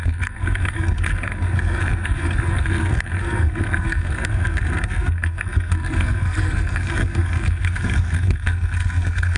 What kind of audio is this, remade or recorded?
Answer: remade